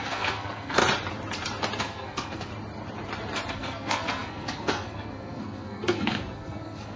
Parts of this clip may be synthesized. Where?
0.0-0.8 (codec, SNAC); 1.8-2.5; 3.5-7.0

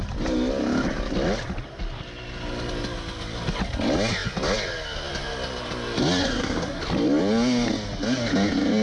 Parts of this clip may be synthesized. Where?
6.2-6.8 (codec, SNAC)

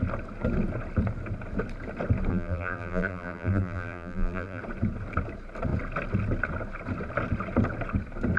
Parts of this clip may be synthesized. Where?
2.3-4.6 (vocoder, BigVGAN v2)

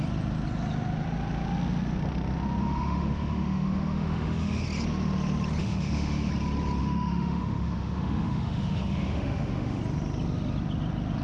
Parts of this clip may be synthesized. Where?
2.6-4.6 (autoencoder, DAC-VAE); 5.6-6.3; 6.8-9.8

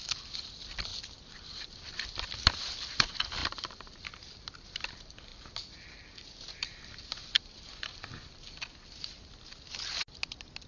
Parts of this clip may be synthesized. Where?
0.9-2.0 (vocoder, BigVGAN v2); 3.4-4.3; 5.3-5.9

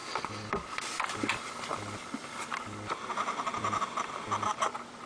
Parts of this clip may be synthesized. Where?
1.7-5.1 (vocoder, BigVGAN v2)

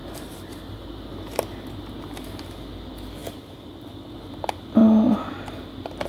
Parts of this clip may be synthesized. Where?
0.0-2.3 (vocoder, BigVGAN v2)

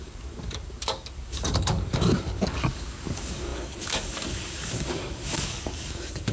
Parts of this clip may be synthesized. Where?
0.0-6.3 (codec, DAC)